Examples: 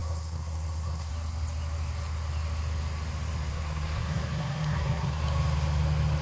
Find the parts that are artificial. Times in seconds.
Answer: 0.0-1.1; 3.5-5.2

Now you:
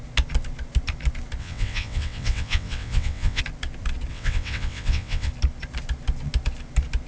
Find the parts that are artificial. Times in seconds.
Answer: 1.4-3.4; 4.1-5.3

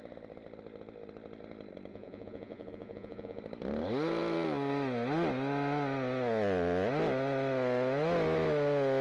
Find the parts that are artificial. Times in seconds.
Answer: 1.9-3.4

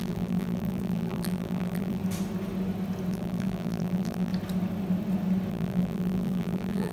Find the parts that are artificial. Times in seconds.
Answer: 0.0-2.0; 3.1-4.3; 5.5-6.9

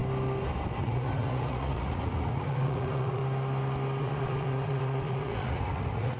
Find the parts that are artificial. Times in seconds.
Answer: 0.8-3.2; 4.0-6.2

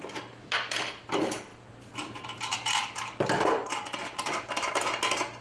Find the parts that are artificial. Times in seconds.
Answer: none

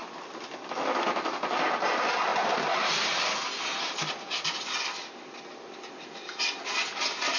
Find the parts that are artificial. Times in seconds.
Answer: none